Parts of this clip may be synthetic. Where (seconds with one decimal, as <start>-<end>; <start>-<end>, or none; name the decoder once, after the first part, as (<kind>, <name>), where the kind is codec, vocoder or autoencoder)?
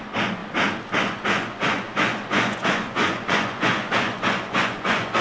0.0-0.4 (vocoder, Vocos); 1.0-5.2